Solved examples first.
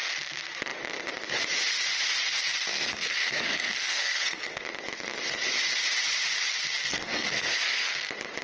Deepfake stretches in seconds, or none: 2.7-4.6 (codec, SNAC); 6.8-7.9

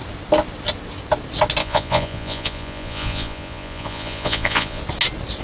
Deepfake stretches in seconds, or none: 1.6-4.8 (vocoder, Vocos)

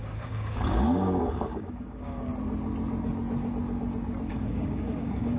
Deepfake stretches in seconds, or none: 0.0-2.3 (codec, DAC); 4.3-5.4

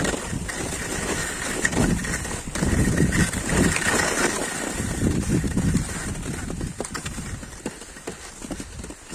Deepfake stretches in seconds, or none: none